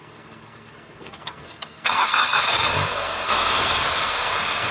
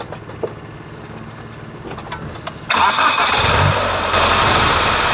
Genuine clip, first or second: second